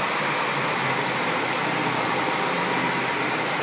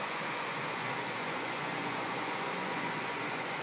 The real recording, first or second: first